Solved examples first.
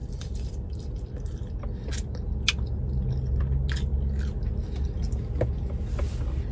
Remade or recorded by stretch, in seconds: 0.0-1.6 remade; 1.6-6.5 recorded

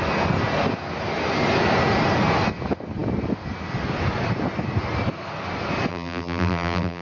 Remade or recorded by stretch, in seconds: 0.0-5.9 recorded; 5.9-7.0 remade

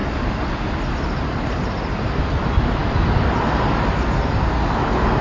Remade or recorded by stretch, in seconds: 0.0-2.2 remade; 2.2-5.2 recorded

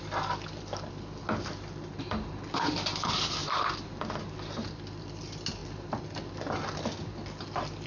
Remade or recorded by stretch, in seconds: 0.0-3.4 recorded; 3.4-4.7 remade; 4.7-7.9 recorded

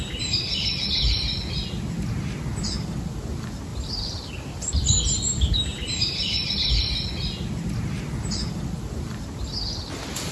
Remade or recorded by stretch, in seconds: 0.0-3.7 recorded; 3.7-4.3 remade; 4.3-5.7 recorded; 5.7-6.5 remade; 6.5-10.3 recorded